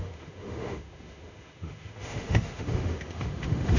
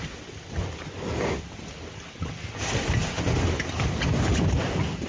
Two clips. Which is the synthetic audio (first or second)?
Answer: first